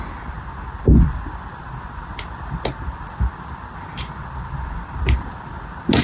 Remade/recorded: recorded